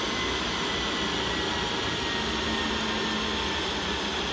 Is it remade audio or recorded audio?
recorded